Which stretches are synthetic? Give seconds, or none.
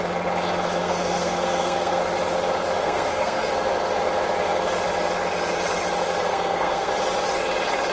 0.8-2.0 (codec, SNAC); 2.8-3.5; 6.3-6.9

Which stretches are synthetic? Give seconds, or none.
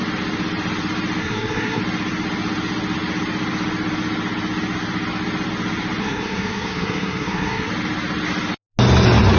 1.2-1.8 (codec, SNAC); 6.0-7.7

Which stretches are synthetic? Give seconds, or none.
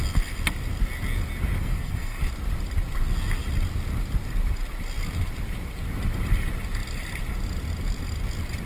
1.6-2.2 (codec, SNAC)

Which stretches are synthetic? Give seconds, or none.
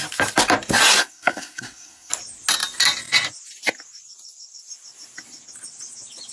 1.0-2.1 (codec, SNAC)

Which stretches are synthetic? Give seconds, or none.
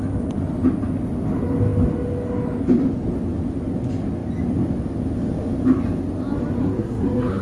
6.6-7.4 (codec, SNAC)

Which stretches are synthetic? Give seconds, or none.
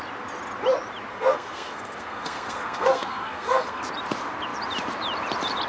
1.1-3.8 (codec, SNAC)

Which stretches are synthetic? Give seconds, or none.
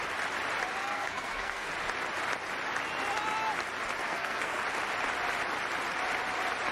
0.8-1.7 (codec, SNAC); 4.0-4.6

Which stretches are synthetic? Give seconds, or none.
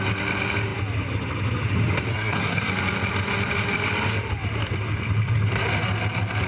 2.1-2.7 (codec, SNAC)